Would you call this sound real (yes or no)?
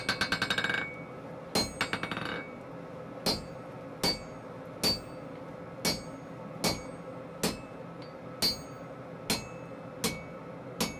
yes